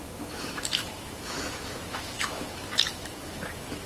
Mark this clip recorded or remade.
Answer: remade